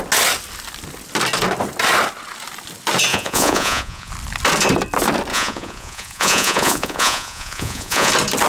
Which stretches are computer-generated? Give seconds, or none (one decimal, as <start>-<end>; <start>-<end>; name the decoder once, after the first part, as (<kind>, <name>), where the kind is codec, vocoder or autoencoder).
3.1-4.1 (vocoder, Vocos); 5.3-8.1